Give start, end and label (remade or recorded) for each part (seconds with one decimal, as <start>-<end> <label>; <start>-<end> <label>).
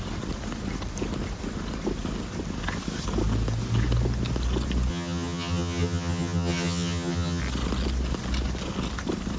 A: 0.0-4.9 recorded; 4.9-7.4 remade; 7.4-9.4 recorded